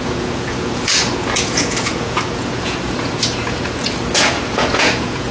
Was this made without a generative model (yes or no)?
no